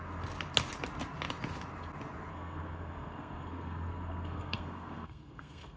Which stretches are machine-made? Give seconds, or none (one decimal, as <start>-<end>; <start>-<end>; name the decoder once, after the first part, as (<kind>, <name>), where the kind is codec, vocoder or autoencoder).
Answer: 2.3-5.8 (codec, SNAC)